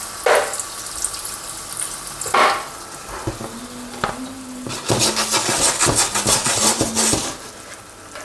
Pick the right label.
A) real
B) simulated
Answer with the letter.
A